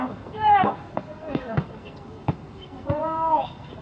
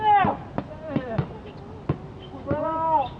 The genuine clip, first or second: second